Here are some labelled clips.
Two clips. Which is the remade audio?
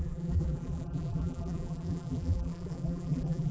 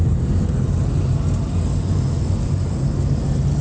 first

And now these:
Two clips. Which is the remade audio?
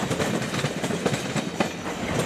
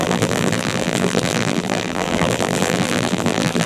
second